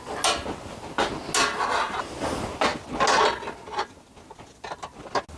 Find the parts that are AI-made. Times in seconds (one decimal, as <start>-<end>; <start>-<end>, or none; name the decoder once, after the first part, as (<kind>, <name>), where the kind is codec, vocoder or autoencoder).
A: none

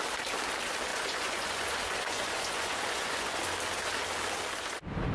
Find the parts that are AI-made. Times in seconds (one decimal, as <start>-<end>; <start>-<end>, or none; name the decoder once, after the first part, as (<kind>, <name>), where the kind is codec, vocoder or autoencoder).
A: 0.9-3.4 (vocoder, Vocos)